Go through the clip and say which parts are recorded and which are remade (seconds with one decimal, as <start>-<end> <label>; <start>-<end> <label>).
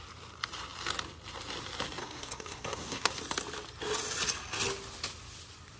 0.0-2.0 recorded; 2.0-3.1 remade; 3.1-5.8 recorded